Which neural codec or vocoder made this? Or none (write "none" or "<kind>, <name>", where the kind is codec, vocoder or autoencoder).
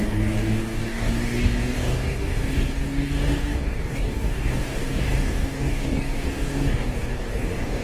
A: codec, DAC